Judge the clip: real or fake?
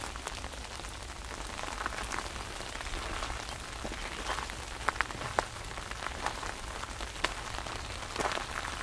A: real